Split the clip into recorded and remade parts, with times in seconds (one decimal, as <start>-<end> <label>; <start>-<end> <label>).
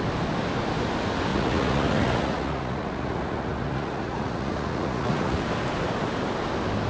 0.0-1.3 recorded; 1.3-5.4 remade; 5.4-6.9 recorded